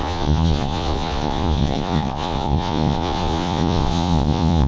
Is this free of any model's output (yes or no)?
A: no